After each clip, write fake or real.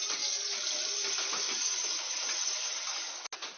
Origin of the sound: real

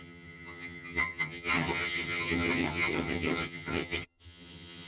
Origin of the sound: fake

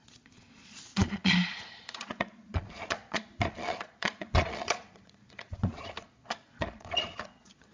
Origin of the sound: fake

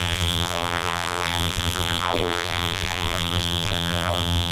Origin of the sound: fake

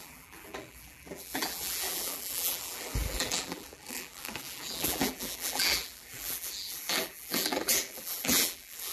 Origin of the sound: fake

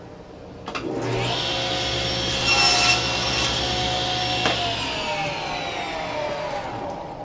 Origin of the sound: real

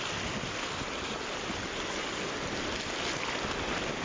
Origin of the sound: real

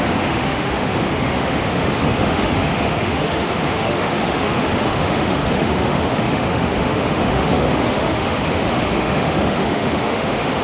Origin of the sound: fake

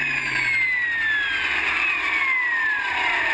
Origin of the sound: real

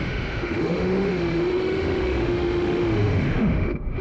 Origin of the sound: fake